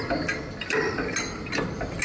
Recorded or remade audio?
recorded